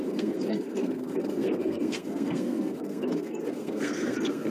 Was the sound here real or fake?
fake